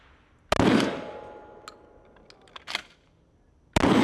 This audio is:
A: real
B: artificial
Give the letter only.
A